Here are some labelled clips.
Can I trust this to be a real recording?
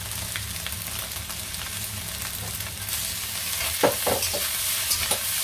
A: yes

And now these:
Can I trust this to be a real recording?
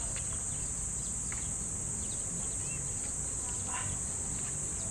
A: no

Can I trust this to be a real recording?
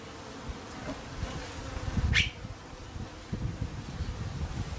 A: yes